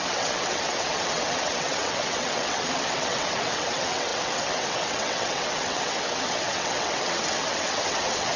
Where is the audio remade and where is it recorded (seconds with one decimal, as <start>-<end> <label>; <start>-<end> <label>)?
0.0-8.4 remade